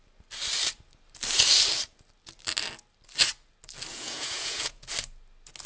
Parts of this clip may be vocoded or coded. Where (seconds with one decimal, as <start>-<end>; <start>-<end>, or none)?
3.9-4.9